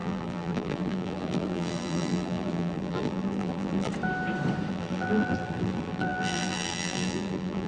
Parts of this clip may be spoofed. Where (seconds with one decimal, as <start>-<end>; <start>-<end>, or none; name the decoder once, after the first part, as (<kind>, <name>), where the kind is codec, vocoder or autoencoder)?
0.0-3.9 (vocoder, BigVGAN v2); 4.7-7.7